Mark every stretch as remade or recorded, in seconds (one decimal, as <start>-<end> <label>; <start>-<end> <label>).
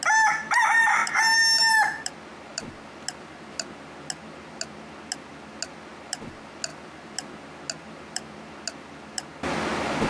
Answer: 0.0-10.1 recorded